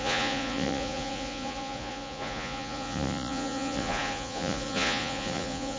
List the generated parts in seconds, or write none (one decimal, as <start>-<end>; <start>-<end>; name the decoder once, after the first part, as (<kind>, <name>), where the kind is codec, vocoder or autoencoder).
0.0-5.8 (vocoder, Vocos)

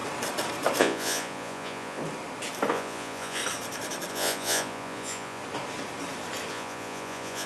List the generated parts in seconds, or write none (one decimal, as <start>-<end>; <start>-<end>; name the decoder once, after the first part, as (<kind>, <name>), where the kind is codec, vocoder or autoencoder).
0.8-2.0 (vocoder, Vocos); 2.7-3.4; 4.1-5.4; 6.5-7.5

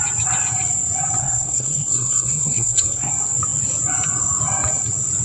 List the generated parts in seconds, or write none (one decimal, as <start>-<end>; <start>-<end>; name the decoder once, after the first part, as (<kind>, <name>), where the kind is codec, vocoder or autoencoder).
1.2-3.1 (codec, SNAC)

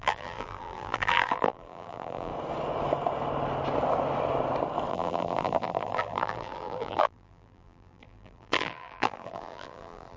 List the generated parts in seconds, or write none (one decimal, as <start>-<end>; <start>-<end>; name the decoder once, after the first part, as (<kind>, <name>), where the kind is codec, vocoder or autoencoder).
0.0-2.3 (vocoder, BigVGAN v2); 4.9-10.2

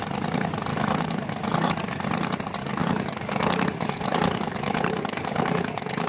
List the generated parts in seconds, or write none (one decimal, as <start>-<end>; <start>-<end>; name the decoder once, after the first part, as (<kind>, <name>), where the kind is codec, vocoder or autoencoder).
0.7-1.7 (codec, DAC); 2.6-6.1